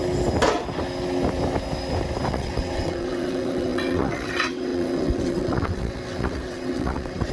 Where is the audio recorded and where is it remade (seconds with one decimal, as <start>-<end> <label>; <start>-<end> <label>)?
0.0-2.3 recorded; 2.3-7.3 remade